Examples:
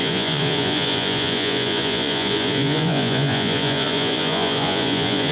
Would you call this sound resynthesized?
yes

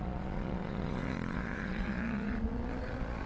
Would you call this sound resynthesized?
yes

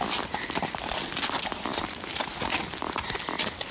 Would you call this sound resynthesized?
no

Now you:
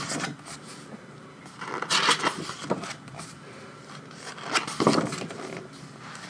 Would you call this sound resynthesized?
no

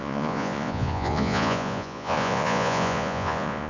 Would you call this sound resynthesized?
yes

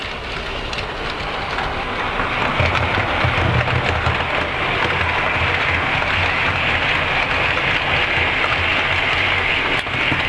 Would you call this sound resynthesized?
no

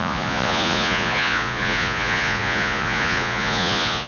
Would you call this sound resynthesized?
yes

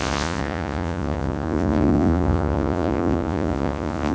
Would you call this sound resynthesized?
yes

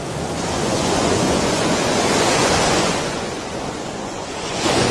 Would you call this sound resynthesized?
yes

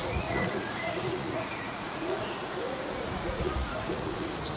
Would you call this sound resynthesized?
yes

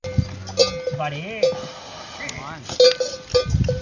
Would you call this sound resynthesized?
no